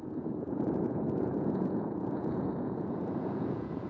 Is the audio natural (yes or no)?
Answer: no